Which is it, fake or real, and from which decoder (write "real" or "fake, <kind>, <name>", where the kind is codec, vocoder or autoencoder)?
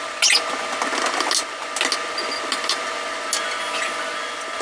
real